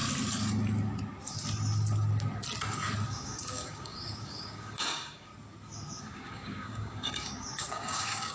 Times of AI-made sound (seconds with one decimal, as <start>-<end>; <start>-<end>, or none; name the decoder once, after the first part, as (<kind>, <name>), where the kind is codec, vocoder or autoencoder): 3.1-5.3 (codec, DAC); 6.0-8.3